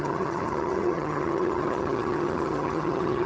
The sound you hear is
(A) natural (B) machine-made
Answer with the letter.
B